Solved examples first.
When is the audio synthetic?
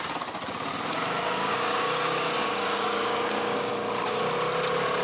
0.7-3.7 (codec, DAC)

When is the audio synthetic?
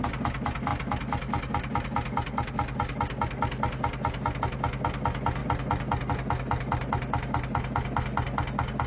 none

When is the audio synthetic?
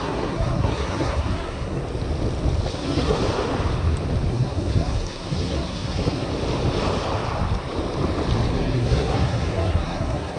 0.0-1.8 (codec, SNAC); 2.7-3.2; 4.3-6.3; 8.5-10.4